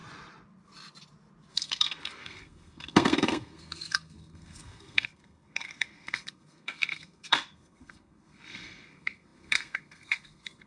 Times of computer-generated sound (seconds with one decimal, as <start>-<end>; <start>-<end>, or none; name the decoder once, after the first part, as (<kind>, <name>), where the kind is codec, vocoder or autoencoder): 1.5-10.7 (codec, SNAC)